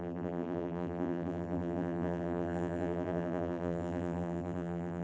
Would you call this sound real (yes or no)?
no